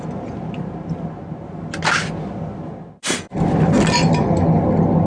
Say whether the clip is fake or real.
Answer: real